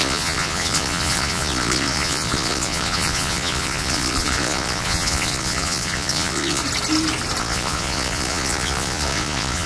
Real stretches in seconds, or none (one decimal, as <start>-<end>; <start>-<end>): 6.6-7.4